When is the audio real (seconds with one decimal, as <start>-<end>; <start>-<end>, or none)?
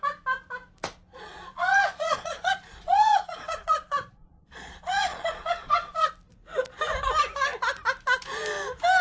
0.0-1.1; 6.1-9.0